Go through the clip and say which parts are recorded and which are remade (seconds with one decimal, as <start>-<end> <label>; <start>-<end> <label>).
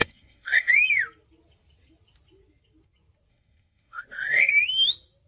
0.0-0.7 remade; 0.7-3.3 recorded; 3.3-4.5 remade; 4.5-5.3 recorded